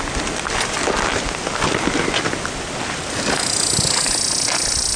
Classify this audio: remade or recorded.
recorded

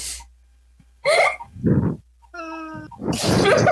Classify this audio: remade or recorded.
recorded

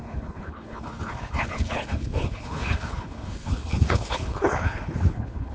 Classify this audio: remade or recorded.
remade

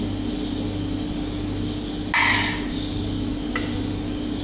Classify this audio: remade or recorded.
recorded